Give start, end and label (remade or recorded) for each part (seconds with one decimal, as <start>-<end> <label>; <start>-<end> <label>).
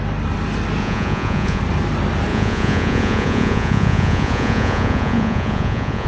0.0-0.8 recorded; 0.8-1.6 remade; 1.6-2.3 recorded; 2.3-6.1 remade